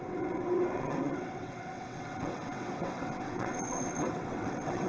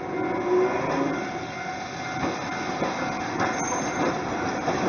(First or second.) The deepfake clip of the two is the first